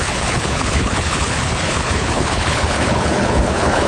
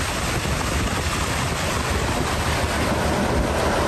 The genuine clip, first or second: second